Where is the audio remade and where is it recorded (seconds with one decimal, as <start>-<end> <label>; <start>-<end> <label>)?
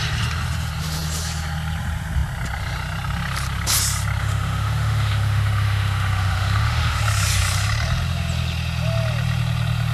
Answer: 0.0-4.2 recorded; 4.2-7.0 remade; 7.0-9.9 recorded